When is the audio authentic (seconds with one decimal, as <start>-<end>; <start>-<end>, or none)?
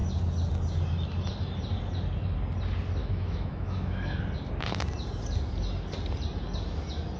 0.0-3.0; 4.2-7.2